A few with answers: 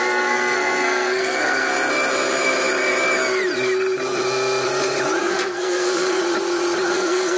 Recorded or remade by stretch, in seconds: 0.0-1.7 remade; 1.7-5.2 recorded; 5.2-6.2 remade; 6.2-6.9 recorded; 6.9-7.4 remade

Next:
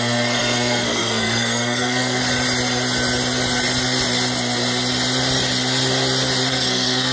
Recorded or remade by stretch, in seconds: 0.0-2.2 remade; 2.2-6.5 recorded; 6.5-7.1 remade

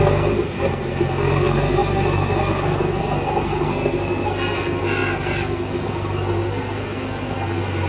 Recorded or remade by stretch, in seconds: 0.0-7.9 remade